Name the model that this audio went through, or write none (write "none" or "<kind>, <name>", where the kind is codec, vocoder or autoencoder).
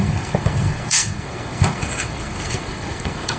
codec, SNAC